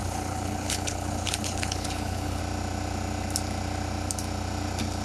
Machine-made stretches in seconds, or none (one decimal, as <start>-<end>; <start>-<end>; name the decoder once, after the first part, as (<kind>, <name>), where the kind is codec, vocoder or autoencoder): 0.0-2.4 (codec, HILCodec)

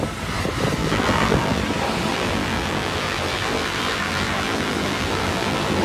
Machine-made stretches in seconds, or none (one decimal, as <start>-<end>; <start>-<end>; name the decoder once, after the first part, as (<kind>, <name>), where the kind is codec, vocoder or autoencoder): 0.8-1.6 (vocoder, BigVGAN v2); 2.1-5.8

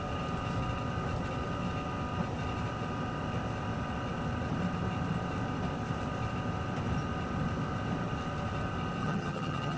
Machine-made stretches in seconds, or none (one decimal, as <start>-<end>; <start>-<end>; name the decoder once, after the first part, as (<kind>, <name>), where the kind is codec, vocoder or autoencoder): 9.0-9.8 (vocoder, HiFi-GAN)

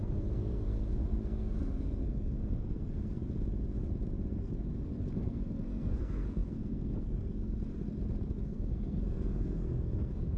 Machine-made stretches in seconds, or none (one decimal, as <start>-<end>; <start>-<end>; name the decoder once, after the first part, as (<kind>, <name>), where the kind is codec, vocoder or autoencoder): 0.0-3.2 (codec, SNAC); 4.3-7.6; 8.4-10.4

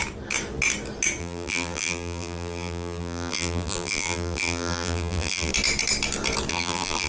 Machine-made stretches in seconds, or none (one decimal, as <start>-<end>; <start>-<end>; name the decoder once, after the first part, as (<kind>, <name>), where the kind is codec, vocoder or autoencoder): 1.2-5.5 (vocoder, BigVGAN v2); 6.5-7.1